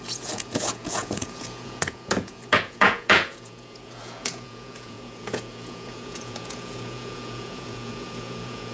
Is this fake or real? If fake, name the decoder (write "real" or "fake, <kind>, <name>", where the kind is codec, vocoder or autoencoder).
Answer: fake, vocoder, Vocos